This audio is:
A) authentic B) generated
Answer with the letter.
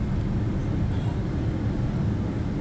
A